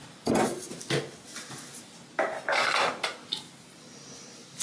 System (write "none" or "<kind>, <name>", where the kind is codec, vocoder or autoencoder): none